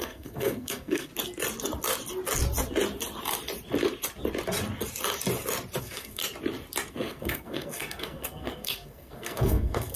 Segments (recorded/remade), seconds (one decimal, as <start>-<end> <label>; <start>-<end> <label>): 0.0-1.1 remade; 1.1-5.8 recorded; 5.8-6.2 remade; 6.2-6.9 recorded; 6.9-10.0 remade